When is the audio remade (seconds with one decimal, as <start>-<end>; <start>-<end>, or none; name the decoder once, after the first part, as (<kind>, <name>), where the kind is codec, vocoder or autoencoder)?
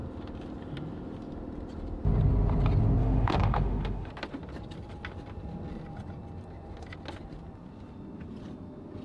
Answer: 3.0-4.1 (autoencoder, DAC-VAE)